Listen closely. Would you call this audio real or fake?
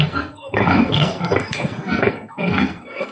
fake